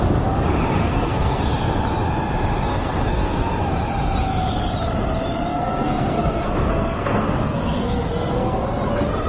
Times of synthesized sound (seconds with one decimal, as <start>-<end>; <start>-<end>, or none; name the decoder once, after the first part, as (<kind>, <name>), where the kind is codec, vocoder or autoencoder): 0.8-1.4 (codec, SNAC); 2.7-3.5; 5.5-8.9